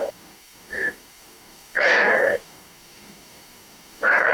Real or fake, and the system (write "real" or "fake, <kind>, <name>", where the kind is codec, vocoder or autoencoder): fake, codec, DAC